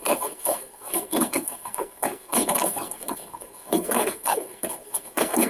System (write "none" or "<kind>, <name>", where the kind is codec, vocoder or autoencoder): codec, SNAC